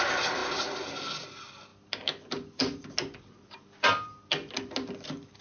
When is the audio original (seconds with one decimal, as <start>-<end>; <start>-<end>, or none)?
0.0-5.4